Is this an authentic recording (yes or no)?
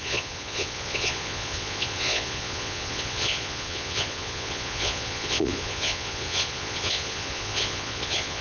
no